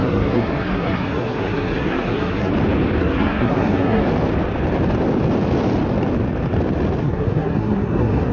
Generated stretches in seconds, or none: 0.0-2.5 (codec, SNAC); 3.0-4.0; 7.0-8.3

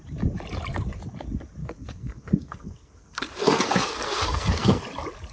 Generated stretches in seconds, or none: 1.6-4.8 (codec, SNAC)

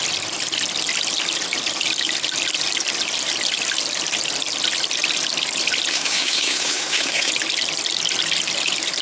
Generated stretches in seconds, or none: 5.9-7.3 (codec, SNAC)

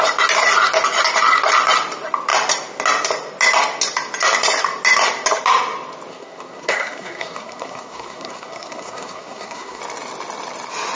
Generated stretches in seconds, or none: 6.1-9.8 (codec, SNAC)